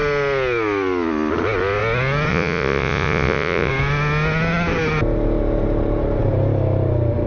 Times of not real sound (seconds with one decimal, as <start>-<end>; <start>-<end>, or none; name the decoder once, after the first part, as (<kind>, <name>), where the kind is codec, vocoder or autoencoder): 2.3-3.7 (vocoder, Vocos)